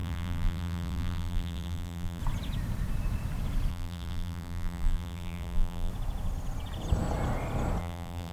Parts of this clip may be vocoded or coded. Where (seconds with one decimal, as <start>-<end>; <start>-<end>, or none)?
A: 0.0-2.2; 3.7-5.9; 7.8-8.3